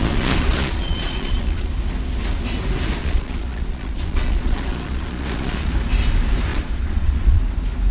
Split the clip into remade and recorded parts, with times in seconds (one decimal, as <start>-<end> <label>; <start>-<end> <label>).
0.0-1.7 remade; 1.7-3.0 recorded; 3.0-5.7 remade; 5.7-6.5 recorded; 6.5-7.4 remade; 7.4-7.9 recorded